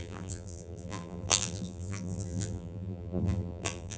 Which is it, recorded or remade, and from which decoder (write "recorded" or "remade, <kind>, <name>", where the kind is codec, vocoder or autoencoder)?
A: remade, vocoder, BigVGAN v2